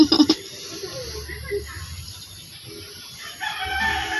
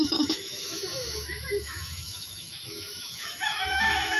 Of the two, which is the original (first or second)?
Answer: first